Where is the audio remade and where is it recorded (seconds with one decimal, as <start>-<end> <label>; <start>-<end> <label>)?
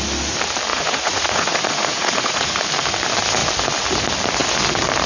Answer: 0.0-0.7 recorded; 0.7-2.6 remade; 2.6-5.1 recorded